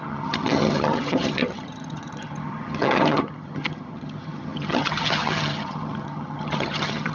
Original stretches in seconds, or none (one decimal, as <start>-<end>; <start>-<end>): none